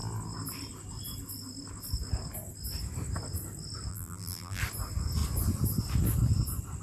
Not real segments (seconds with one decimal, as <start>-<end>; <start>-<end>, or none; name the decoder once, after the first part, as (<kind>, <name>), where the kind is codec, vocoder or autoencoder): 3.9-4.6 (vocoder, BigVGAN v2)